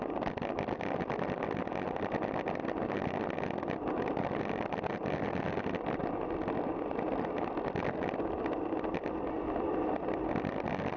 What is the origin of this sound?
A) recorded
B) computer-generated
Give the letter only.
A